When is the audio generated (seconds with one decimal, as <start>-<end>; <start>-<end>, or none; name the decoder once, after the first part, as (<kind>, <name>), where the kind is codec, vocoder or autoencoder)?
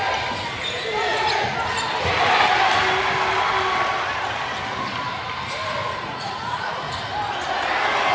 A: 5.8-6.9 (vocoder, Vocos)